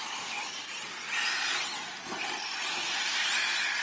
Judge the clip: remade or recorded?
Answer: recorded